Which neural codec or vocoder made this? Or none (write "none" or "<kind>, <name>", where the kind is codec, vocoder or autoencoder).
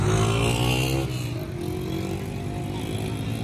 none